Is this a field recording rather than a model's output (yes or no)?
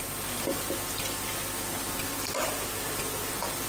yes